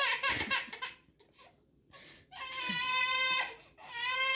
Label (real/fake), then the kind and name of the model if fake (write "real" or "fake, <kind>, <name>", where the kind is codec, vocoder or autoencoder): fake, vocoder, BigVGAN v2